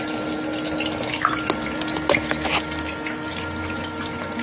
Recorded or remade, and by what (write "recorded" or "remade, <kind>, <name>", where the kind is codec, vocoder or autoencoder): recorded